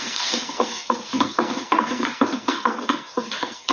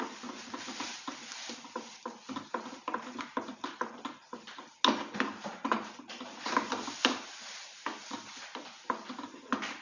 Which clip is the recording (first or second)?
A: second